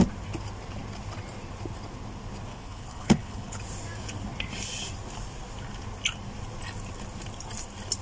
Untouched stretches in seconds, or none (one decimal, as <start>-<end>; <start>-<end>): 0.0-2.5; 3.6-8.0